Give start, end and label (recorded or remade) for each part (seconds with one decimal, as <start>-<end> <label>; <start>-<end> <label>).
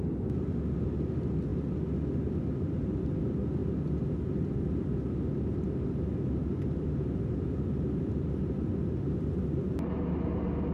0.0-10.7 recorded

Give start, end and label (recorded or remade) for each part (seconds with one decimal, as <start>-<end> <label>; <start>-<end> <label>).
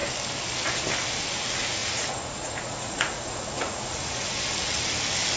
0.0-1.8 recorded; 1.8-4.4 remade; 4.4-5.4 recorded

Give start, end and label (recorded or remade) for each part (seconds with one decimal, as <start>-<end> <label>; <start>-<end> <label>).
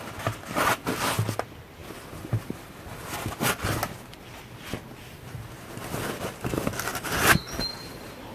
0.0-8.3 recorded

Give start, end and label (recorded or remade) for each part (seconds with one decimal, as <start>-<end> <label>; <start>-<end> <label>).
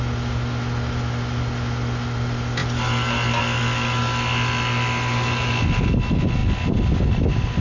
0.0-7.6 recorded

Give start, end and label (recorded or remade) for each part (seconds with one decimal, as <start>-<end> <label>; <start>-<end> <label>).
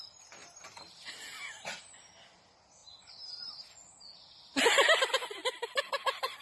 0.0-0.4 recorded; 0.4-1.1 remade; 1.1-5.4 recorded; 5.4-6.4 remade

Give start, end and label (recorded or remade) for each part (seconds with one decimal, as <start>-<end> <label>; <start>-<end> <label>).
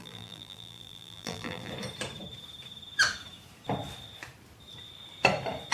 0.0-1.7 remade; 1.7-5.7 recorded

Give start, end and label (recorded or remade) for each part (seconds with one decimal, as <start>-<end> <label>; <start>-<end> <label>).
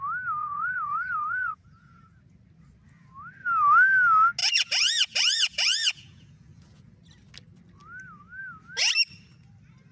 0.0-0.4 recorded; 0.4-2.2 remade; 2.2-4.4 recorded; 4.4-6.9 remade; 6.9-9.9 recorded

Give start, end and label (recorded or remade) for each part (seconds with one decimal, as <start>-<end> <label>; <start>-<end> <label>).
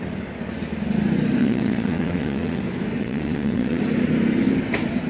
0.0-1.4 recorded; 1.4-2.6 remade; 2.6-3.0 recorded; 3.0-3.8 remade; 3.8-5.1 recorded